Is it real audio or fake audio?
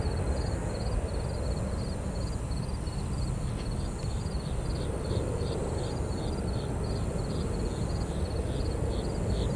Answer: real